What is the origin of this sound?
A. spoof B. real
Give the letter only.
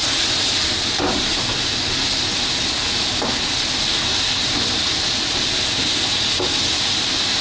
B